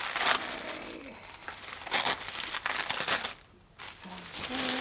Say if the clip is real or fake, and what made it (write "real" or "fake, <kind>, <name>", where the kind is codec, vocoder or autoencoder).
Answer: real